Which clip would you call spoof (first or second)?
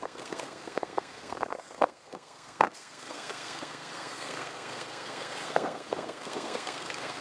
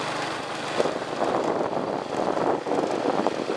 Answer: first